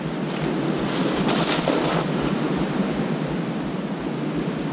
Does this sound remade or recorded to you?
recorded